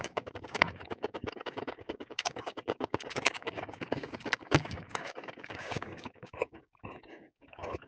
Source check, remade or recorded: remade